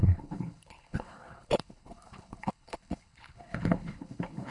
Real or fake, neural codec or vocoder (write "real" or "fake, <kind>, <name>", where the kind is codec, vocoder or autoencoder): fake, codec, HILCodec